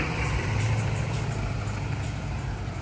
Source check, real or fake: fake